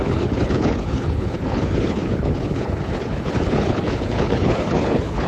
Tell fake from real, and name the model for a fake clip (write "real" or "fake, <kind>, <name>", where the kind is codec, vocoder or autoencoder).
fake, codec, HILCodec